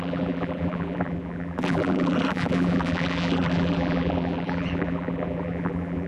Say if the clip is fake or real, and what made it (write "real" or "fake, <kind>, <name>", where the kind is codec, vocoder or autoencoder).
fake, vocoder, BigVGAN v2